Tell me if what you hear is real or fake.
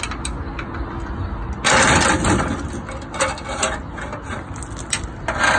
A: real